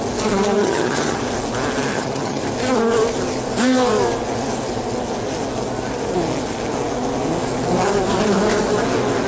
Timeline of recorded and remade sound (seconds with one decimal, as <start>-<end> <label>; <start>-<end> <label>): 0.0-0.6 recorded; 0.6-1.2 remade; 1.2-1.9 recorded; 1.9-2.4 remade; 2.4-9.3 recorded